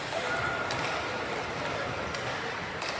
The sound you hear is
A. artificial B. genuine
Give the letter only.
B